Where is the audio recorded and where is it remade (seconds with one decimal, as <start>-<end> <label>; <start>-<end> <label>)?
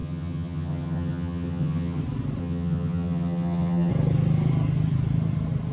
0.0-2.0 remade; 2.0-2.4 recorded; 2.4-3.9 remade; 3.9-5.7 recorded